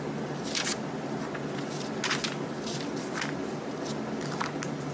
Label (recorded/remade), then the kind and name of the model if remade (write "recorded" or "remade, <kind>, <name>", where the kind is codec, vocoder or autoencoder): recorded